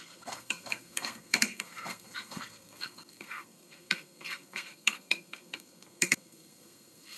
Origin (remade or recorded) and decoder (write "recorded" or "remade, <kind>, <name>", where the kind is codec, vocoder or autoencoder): remade, codec, SNAC